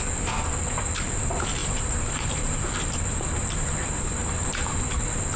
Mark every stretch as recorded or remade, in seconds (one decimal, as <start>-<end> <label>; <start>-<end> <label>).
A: 0.0-1.6 recorded; 1.6-4.8 remade; 4.8-5.4 recorded